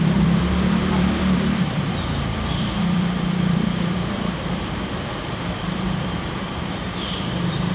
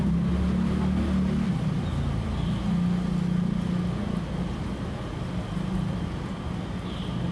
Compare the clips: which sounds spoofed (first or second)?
first